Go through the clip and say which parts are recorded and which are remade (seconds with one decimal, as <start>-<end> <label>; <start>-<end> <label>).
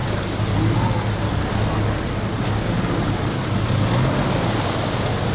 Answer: 0.0-5.3 recorded